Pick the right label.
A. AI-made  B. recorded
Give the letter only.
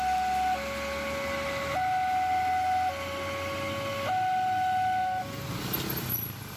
B